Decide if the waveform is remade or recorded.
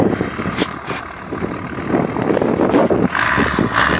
recorded